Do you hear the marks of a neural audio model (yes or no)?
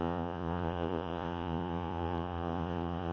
yes